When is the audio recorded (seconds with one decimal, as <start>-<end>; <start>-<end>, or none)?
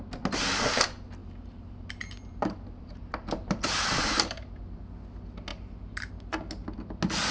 0.0-1.2; 4.8-5.5; 6.1-7.3